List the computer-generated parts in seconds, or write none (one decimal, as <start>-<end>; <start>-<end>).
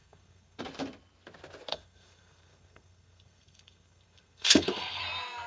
0.0-0.6; 1.7-5.0